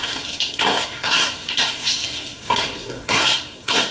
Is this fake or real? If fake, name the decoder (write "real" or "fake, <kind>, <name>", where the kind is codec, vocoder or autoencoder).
fake, codec, SNAC